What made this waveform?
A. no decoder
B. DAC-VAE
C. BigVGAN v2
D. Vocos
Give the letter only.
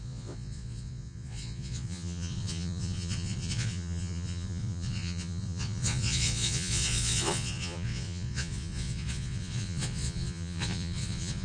D